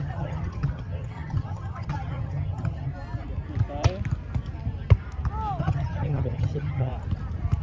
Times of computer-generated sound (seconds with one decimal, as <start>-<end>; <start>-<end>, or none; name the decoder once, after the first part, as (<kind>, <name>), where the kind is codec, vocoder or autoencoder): 0.0-2.9 (vocoder, HiFi-GAN); 5.6-6.9